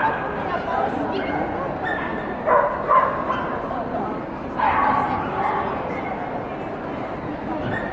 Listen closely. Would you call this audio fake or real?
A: real